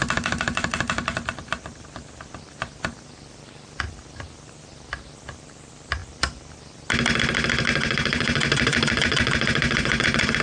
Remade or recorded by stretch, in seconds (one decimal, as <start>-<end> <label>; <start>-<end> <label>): 0.0-7.7 recorded; 7.7-10.4 remade